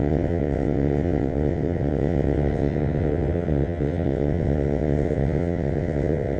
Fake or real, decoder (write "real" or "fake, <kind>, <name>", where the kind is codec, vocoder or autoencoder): fake, vocoder, WaveNeXt